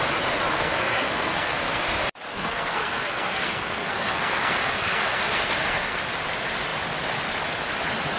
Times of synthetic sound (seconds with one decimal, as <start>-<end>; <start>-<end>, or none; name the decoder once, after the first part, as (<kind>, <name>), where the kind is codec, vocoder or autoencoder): 0.5-1.8 (codec, SNAC); 2.3-6.0